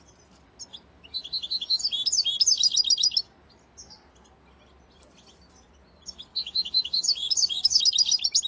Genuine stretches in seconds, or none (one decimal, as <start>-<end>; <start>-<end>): 0.0-6.3; 7.8-8.5